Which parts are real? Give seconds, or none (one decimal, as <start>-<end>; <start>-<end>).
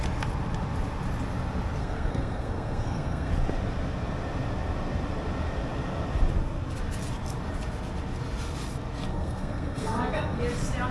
0.0-1.8; 3.3-9.1; 10.4-10.9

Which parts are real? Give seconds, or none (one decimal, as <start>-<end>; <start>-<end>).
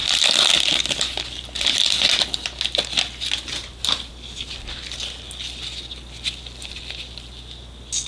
0.0-8.1